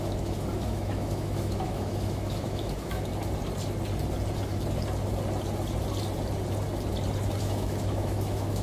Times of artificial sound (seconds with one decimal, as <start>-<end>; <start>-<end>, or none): 0.0-3.1; 7.4-8.6